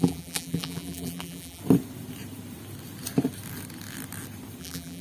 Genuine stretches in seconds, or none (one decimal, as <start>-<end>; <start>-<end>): 1.6-4.6